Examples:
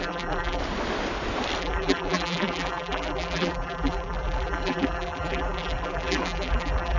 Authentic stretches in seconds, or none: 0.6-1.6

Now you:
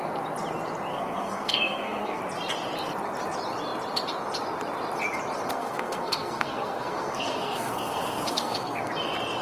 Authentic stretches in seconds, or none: 0.0-0.9; 2.2-5.5; 8.9-9.4